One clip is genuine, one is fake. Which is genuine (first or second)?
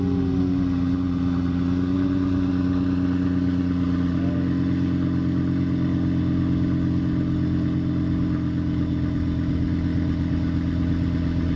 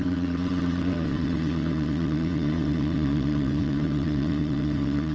first